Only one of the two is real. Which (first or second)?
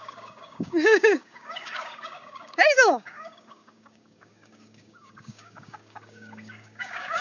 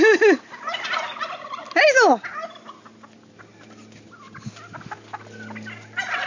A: second